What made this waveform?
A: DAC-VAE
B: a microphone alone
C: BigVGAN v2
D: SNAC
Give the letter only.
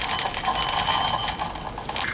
B